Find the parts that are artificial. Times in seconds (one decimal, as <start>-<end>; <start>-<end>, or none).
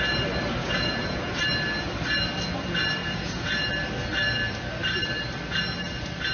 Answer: 0.6-1.3; 3.0-3.7